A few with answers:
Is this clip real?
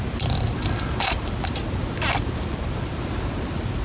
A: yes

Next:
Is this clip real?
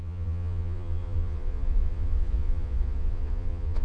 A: no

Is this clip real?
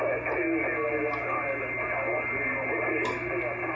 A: yes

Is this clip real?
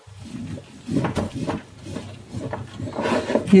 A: yes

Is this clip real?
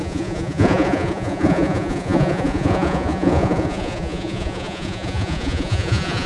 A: no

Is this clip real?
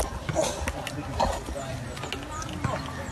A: yes